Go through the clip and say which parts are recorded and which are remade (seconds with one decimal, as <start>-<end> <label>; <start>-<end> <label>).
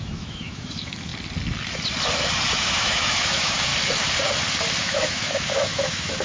0.0-1.1 remade; 1.1-2.5 recorded; 2.5-3.7 remade; 3.7-4.8 recorded; 4.8-6.2 remade